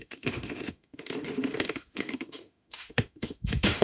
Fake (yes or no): yes